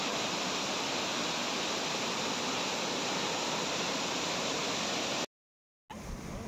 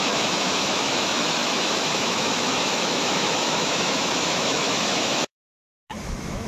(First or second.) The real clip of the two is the first